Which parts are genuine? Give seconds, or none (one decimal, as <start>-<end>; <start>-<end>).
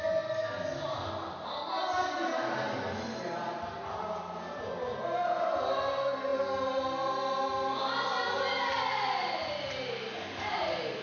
0.0-11.0